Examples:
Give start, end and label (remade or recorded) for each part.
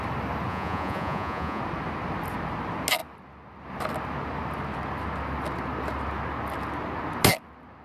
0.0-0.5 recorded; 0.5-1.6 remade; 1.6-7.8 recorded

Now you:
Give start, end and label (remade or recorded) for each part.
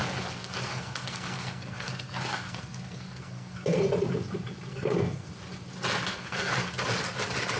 0.0-3.8 remade; 3.8-4.7 recorded; 4.7-5.3 remade; 5.3-6.1 recorded; 6.1-6.7 remade; 6.7-7.6 recorded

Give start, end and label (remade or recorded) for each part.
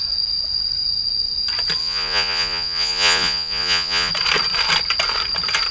0.0-1.8 recorded; 1.8-4.1 remade; 4.1-5.7 recorded